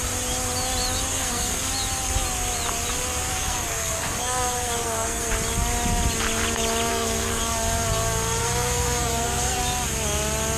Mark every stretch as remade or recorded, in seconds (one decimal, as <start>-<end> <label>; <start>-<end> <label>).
0.0-1.1 recorded; 1.1-1.7 remade; 1.7-3.3 recorded; 3.3-5.3 remade; 5.3-6.9 recorded; 6.9-7.4 remade; 7.4-8.4 recorded; 8.4-9.6 remade; 9.6-10.6 recorded